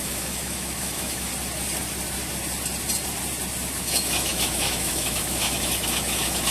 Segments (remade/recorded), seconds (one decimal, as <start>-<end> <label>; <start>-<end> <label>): 0.0-1.3 remade; 1.3-3.8 recorded; 3.8-6.5 remade